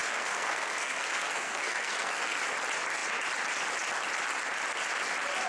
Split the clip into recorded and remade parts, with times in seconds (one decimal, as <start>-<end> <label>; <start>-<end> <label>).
0.0-2.4 remade; 2.4-5.5 recorded